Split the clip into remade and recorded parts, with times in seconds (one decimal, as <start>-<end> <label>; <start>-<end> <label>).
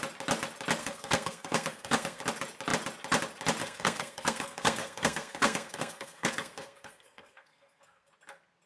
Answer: 0.0-0.8 recorded; 0.8-2.2 remade; 2.2-3.6 recorded; 3.6-8.1 remade; 8.1-8.7 recorded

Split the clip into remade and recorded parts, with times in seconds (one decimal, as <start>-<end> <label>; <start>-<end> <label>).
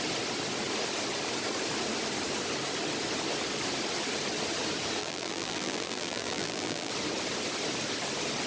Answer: 0.0-5.0 recorded; 5.0-6.9 remade; 6.9-8.5 recorded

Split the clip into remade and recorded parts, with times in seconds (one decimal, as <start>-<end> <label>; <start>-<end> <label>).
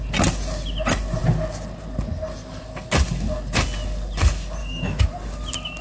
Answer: 0.0-4.6 recorded; 4.6-5.1 remade; 5.1-5.8 recorded